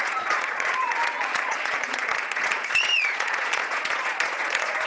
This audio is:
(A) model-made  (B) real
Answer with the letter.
A